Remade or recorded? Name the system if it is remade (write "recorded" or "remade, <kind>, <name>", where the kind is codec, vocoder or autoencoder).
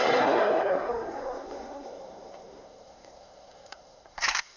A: remade, codec, SNAC